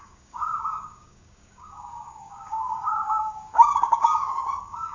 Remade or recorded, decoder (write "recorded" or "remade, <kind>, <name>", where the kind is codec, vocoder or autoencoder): remade, codec, DAC